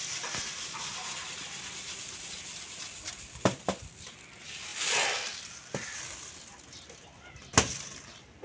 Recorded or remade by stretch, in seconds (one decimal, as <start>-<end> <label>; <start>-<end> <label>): 0.0-8.4 recorded